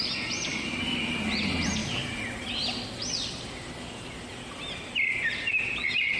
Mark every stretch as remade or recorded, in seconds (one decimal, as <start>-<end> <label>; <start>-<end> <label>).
0.0-6.2 recorded